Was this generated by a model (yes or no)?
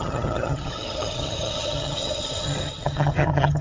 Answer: yes